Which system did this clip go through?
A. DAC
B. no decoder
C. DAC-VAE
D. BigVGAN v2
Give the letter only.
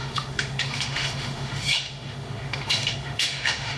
C